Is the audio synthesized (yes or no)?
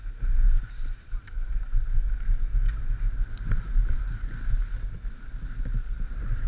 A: no